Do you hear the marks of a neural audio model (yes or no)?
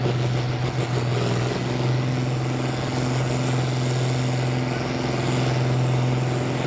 no